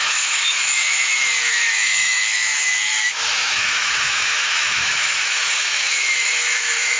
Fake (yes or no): yes